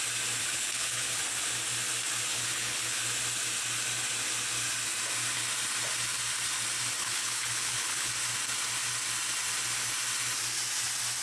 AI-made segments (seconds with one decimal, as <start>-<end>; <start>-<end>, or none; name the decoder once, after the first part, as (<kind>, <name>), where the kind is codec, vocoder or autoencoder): 0.4-1.2 (codec, HILCodec); 2.3-3.0; 7.0-8.1